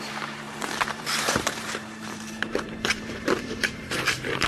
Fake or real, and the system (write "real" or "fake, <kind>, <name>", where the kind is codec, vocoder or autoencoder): fake, vocoder, BigVGAN v2